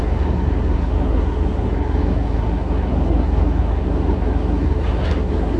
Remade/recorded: remade